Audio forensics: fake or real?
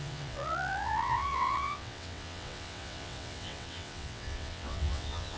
fake